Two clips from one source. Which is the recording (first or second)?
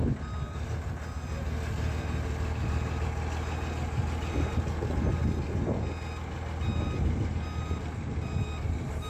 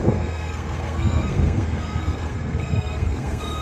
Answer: first